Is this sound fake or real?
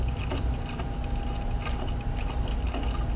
real